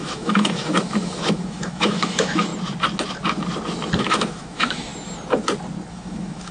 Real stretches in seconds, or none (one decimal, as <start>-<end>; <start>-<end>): 2.5-4.0; 4.9-5.9